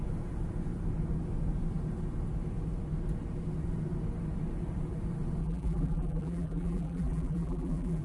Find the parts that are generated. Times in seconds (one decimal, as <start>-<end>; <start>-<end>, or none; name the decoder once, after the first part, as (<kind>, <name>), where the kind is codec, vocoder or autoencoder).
5.4-8.0 (vocoder, BigVGAN v2)